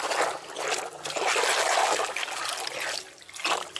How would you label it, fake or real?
real